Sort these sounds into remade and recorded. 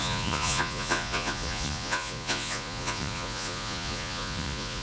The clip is remade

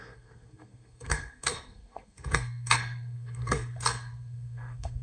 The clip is remade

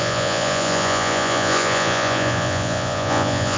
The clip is remade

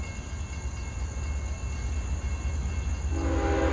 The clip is recorded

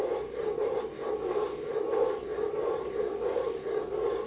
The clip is recorded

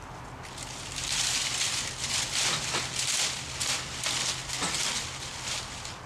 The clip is recorded